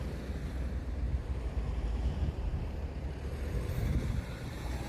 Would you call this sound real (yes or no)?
no